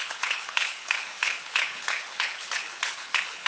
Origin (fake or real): fake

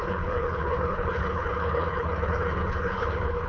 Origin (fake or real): fake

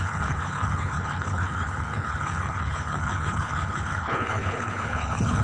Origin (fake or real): fake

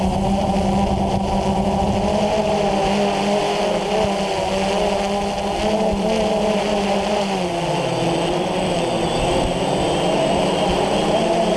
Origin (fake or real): real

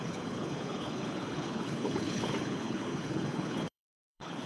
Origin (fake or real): fake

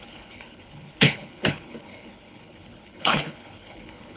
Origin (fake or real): fake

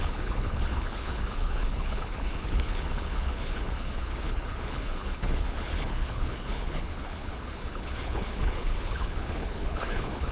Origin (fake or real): fake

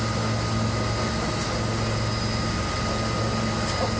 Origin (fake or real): real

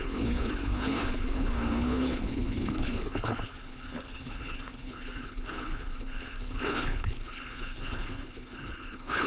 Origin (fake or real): fake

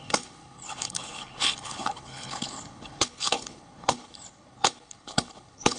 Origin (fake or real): fake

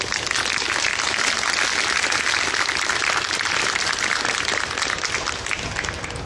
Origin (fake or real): real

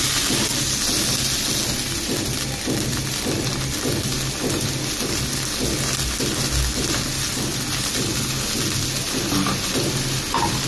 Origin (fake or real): real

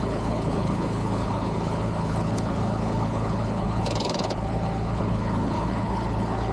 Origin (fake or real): fake